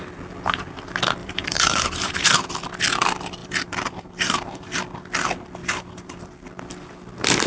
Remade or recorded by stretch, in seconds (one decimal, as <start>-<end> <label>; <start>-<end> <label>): 0.0-1.2 recorded; 1.2-2.6 remade; 2.6-3.4 recorded; 3.4-4.8 remade; 4.8-5.6 recorded; 5.6-6.3 remade; 6.3-7.5 recorded